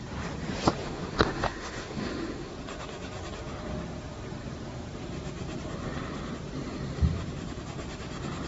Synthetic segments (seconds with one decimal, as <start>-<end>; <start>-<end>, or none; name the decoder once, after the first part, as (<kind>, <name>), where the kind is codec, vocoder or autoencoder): 0.8-2.5 (autoencoder, DAC-VAE)